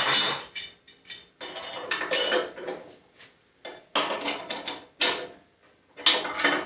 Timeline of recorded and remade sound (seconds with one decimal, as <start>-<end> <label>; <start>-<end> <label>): 0.0-6.7 recorded